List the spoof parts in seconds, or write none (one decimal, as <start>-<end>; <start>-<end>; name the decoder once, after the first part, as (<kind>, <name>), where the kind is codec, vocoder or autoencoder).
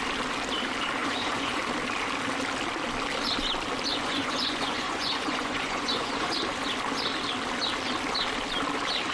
1.0-1.6 (vocoder, Vocos); 3.9-6.3